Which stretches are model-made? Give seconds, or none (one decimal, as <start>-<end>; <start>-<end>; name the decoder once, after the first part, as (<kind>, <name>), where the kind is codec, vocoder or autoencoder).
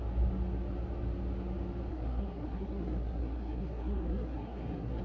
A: 1.9-5.0 (codec, SNAC)